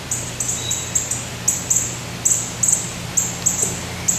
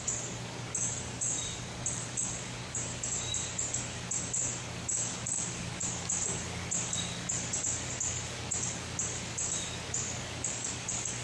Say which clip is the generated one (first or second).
second